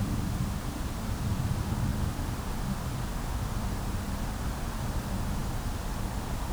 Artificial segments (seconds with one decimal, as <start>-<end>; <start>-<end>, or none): 0.0-6.5